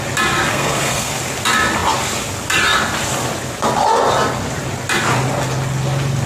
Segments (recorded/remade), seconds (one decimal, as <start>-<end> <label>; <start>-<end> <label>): 0.0-0.5 recorded; 0.5-1.1 remade; 1.1-6.3 recorded